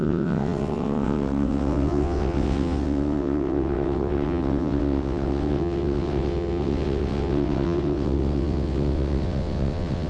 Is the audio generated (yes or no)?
yes